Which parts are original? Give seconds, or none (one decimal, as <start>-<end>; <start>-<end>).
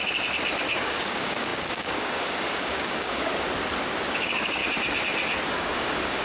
0.0-0.6; 3.3-4.1; 4.6-5.5